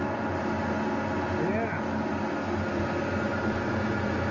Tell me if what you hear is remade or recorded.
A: recorded